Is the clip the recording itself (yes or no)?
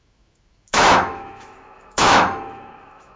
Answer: no